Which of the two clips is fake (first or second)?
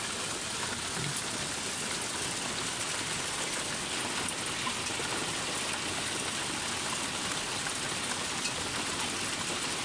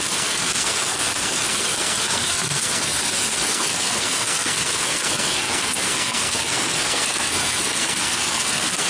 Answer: second